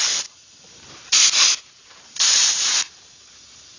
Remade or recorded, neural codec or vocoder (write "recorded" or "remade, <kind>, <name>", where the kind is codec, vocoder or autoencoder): recorded